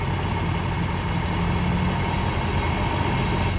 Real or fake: real